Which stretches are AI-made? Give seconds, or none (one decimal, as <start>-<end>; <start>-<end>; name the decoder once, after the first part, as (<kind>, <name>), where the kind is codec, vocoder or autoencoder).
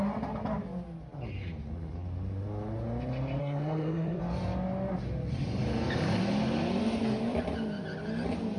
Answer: 3.4-4.2 (codec, SNAC)